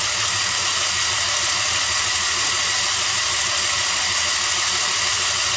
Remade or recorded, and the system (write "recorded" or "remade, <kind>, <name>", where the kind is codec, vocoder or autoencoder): recorded